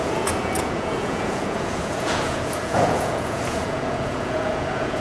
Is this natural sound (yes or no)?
no